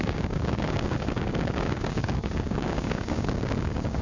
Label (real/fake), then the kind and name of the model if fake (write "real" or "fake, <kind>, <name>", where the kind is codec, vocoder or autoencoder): fake, codec, DAC